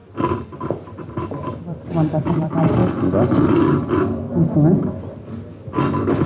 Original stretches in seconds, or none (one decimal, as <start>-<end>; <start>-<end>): 2.8-6.3